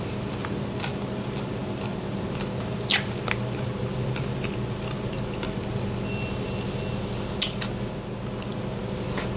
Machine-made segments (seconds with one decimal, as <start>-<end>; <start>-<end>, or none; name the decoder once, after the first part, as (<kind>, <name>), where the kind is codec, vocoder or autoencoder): none